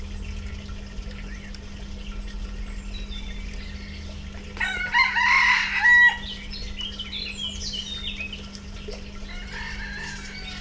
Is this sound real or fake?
real